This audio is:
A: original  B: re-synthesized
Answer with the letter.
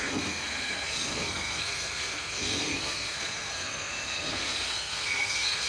B